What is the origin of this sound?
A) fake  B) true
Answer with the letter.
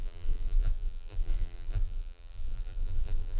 A